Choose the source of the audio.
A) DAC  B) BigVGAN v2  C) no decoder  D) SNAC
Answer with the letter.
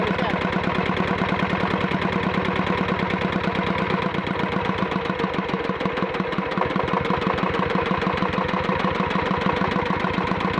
C